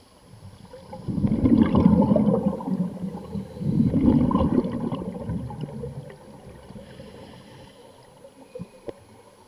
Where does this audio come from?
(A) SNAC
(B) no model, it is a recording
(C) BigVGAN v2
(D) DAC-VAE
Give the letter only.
B